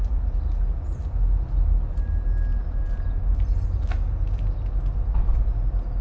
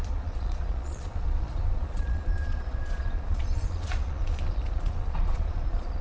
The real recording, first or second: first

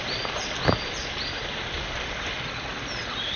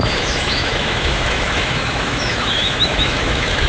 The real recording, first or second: first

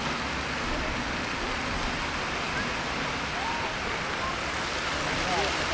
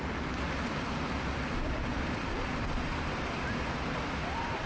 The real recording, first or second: first